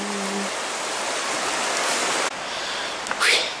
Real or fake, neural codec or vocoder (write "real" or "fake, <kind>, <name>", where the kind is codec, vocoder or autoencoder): real